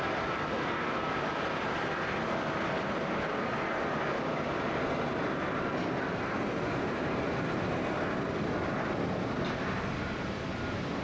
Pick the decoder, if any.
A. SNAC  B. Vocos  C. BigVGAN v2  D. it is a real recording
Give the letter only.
D